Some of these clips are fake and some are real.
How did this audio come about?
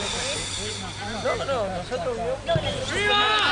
real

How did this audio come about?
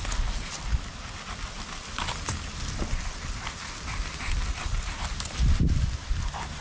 real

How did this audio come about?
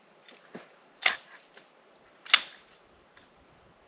real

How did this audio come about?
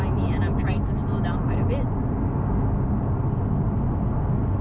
real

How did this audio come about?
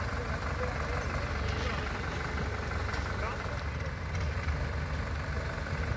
real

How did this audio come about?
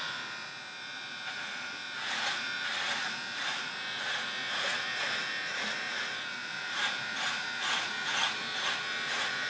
fake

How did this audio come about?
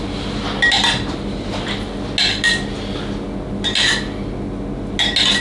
real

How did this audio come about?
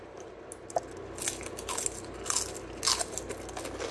real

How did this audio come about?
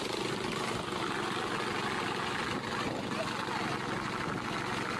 real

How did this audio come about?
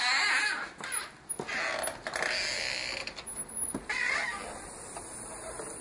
real